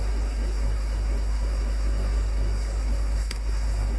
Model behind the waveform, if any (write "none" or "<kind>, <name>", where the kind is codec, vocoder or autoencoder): codec, SNAC